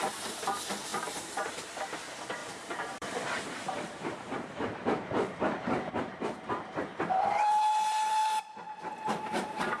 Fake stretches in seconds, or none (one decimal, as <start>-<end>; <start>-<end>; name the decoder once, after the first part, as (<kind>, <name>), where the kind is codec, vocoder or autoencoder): 0.9-1.5 (vocoder, BigVGAN v2); 2.4-7.0